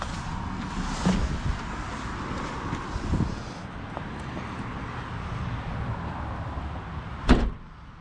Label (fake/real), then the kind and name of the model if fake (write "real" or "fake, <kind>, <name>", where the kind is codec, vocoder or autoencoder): real